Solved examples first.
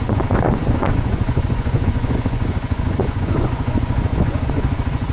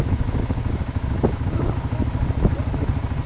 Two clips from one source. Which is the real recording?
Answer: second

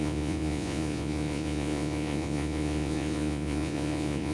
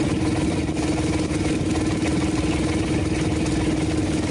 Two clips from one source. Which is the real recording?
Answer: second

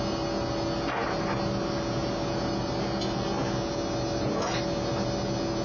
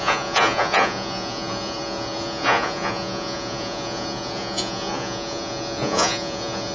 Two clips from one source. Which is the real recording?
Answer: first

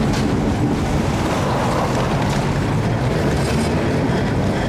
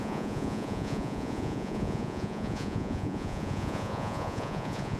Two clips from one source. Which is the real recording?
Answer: first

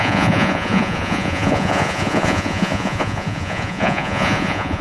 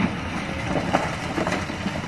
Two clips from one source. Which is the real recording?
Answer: second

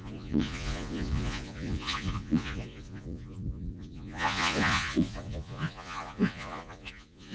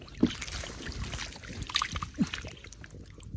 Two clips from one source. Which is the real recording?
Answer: second